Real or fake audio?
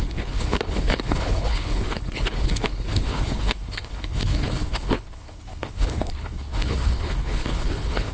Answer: fake